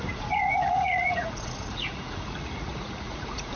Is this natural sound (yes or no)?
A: no